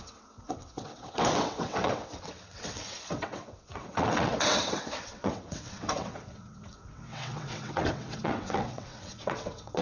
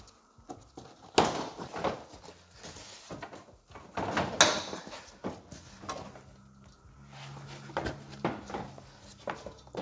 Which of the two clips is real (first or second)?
second